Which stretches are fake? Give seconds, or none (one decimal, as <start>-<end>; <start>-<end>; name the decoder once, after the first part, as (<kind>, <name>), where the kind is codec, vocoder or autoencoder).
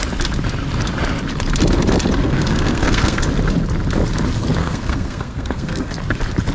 2.2-3.2 (codec, SNAC); 4.6-5.9